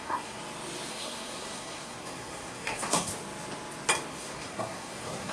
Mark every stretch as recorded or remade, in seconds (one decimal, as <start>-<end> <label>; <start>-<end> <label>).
0.0-0.4 remade; 0.4-0.9 recorded; 0.9-3.1 remade; 3.1-4.1 recorded; 4.1-5.3 remade